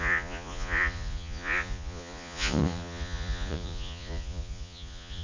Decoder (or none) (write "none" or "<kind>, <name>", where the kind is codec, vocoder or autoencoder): vocoder, Vocos